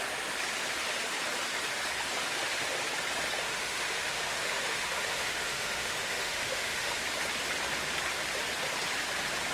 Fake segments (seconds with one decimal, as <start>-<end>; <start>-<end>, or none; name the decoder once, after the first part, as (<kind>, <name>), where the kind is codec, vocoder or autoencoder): 3.4-7.0 (autoencoder, DAC-VAE)